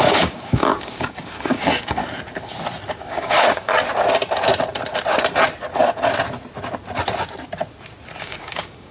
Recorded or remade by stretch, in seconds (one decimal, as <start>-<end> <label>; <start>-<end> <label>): 0.0-2.0 remade; 2.0-2.9 recorded; 2.9-3.7 remade; 3.7-8.2 recorded; 8.2-8.9 remade